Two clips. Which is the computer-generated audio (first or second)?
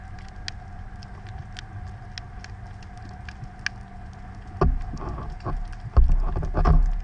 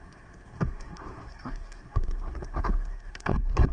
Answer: second